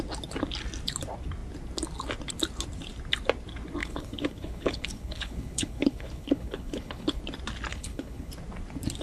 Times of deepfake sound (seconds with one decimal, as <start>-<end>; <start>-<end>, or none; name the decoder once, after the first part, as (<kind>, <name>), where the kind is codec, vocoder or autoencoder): 3.8-7.2 (codec, HILCodec); 7.7-8.3